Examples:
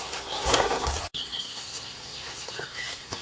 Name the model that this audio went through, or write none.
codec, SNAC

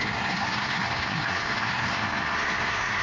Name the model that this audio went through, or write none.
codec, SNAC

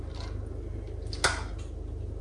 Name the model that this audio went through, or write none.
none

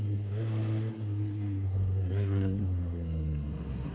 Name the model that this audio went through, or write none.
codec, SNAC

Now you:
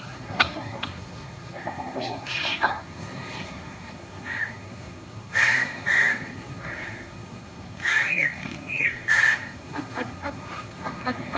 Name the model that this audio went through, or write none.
codec, SNAC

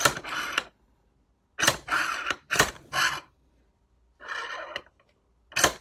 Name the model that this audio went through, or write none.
none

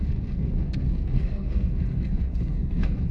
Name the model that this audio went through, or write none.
codec, SNAC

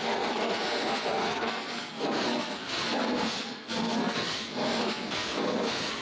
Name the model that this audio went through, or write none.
codec, SNAC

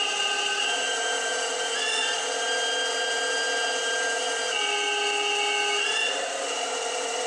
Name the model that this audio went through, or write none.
none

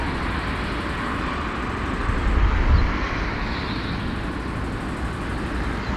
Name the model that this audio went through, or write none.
none